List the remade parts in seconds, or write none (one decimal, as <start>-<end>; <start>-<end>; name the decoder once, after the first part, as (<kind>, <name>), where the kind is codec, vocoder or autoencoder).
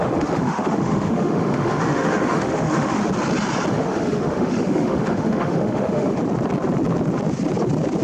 0.0-3.0 (autoencoder, DAC-VAE); 3.7-6.2